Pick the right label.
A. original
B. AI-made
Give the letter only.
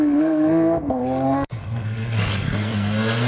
B